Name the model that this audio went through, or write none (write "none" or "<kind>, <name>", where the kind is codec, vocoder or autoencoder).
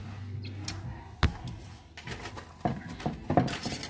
none